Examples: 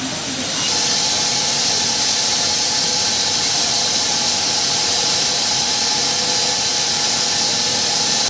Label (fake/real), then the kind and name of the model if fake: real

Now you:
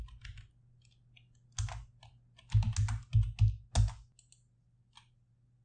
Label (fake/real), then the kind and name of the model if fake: real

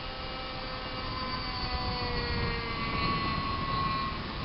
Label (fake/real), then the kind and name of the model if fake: real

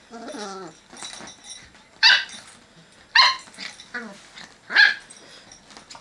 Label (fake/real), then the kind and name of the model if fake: real